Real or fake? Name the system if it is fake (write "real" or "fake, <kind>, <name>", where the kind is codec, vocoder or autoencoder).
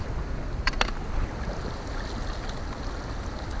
real